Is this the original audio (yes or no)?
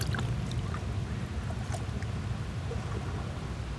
yes